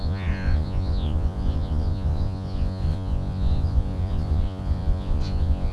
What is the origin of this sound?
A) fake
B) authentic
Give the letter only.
A